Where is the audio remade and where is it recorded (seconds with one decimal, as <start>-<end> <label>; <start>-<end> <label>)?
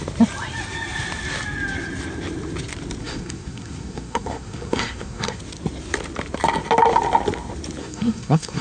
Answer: 0.0-3.0 recorded; 3.0-5.4 remade; 5.4-7.8 recorded; 7.8-8.6 remade